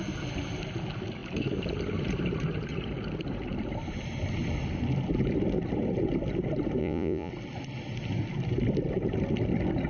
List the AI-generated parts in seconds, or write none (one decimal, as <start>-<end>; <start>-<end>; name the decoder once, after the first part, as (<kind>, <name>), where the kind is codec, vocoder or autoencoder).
6.8-7.3 (vocoder, Vocos)